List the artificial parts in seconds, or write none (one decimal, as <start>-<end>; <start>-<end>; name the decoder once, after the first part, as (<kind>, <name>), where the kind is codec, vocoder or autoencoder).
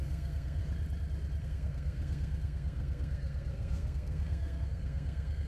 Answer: 0.0-0.6 (codec, SNAC); 1.4-5.5